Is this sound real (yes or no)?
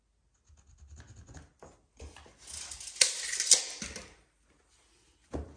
yes